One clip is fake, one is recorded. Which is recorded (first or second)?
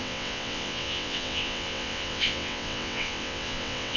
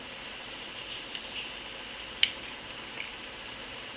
second